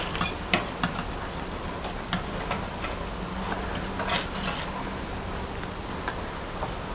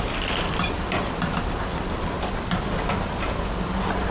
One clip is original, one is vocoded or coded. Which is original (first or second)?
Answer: first